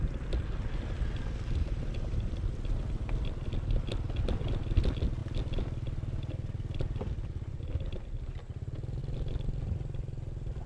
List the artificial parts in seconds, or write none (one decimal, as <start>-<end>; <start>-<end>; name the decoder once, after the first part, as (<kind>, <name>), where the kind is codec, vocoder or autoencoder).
none